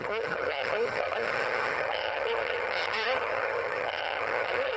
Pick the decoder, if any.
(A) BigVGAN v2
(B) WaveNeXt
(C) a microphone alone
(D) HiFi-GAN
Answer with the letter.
D